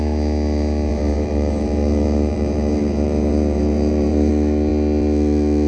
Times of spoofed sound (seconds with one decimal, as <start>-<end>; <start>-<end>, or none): 0.9-4.3